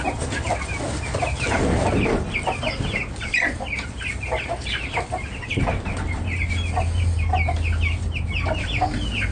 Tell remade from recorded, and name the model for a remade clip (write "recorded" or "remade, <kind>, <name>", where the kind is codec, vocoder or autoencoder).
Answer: recorded